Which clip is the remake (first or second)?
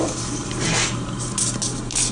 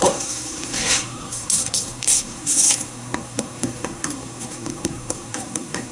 second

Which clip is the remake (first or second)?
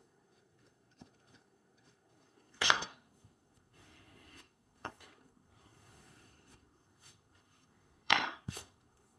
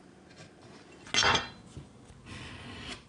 first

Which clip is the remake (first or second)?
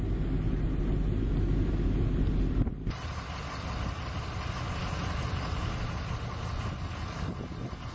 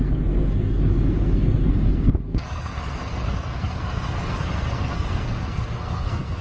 second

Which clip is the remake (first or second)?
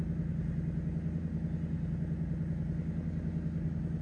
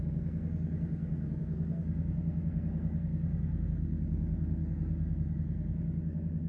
second